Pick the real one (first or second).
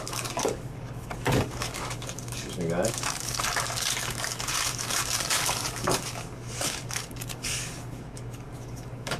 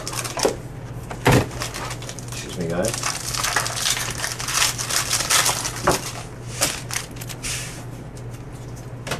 second